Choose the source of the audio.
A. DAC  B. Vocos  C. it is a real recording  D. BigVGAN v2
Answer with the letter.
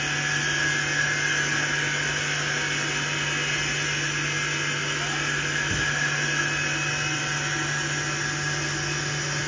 C